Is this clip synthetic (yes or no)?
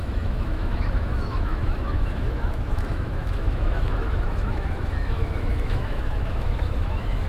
yes